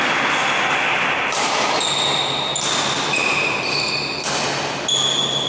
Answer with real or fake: real